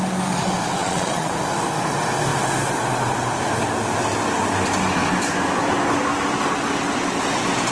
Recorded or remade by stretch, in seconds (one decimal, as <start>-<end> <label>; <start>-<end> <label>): 0.0-0.8 recorded; 0.8-1.3 remade; 1.3-7.7 recorded